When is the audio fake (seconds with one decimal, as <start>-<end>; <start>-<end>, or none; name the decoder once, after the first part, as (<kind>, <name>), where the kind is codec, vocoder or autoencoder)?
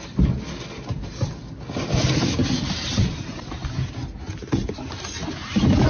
none